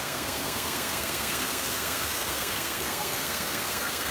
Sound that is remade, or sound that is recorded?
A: remade